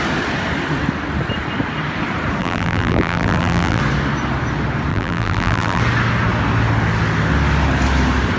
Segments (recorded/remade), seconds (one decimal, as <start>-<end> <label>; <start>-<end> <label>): 0.0-2.4 recorded; 2.4-3.8 remade; 3.8-4.9 recorded; 4.9-5.8 remade; 5.8-8.4 recorded